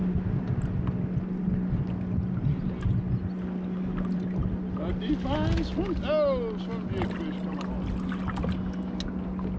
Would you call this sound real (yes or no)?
yes